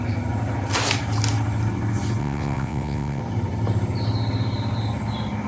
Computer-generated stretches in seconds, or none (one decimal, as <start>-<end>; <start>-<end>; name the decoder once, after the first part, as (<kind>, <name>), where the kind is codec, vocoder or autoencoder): 2.2-3.2 (vocoder, WaveNeXt)